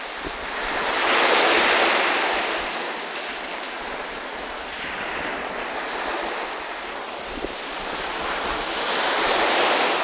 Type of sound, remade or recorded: recorded